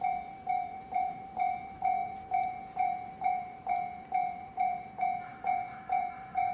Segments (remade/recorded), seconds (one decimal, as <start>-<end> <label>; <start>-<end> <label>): 0.0-6.5 remade